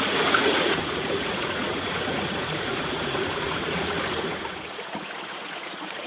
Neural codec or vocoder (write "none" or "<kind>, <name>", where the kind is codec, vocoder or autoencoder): vocoder, Vocos